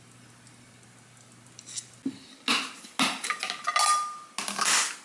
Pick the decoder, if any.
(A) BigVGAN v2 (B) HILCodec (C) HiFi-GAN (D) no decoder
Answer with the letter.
D